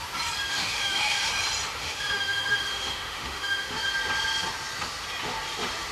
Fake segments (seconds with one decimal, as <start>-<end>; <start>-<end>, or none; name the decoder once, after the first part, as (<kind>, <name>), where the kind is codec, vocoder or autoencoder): 0.5-1.3 (autoencoder, DAC-VAE); 1.8-3.9